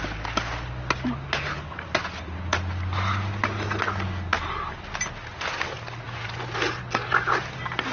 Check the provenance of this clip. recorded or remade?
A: recorded